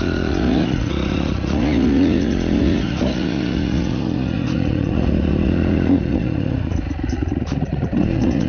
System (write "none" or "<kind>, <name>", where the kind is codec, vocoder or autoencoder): vocoder, Vocos